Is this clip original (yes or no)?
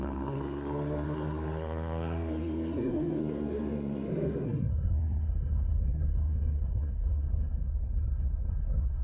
no